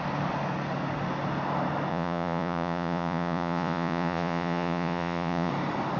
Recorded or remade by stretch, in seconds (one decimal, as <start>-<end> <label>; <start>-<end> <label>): 0.0-1.9 recorded; 1.9-5.5 remade; 5.5-6.0 recorded